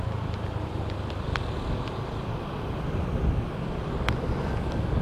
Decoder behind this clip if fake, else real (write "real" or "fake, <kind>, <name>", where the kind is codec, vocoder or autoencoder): real